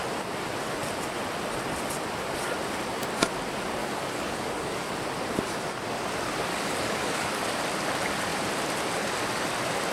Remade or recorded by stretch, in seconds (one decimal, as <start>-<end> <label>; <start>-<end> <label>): 0.0-3.8 recorded; 3.8-4.9 remade; 4.9-6.5 recorded; 6.5-7.4 remade; 7.4-9.9 recorded